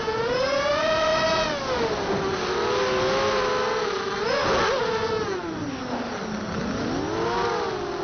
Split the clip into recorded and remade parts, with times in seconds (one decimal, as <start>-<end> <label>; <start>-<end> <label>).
0.0-8.0 recorded